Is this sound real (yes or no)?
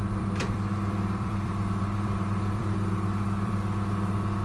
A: no